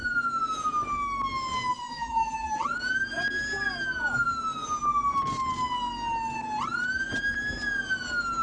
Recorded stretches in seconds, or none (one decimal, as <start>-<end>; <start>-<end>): 0.0-1.7; 2.7-8.4